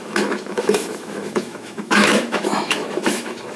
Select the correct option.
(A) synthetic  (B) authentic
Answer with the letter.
A